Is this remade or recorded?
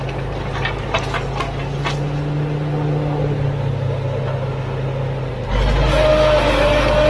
recorded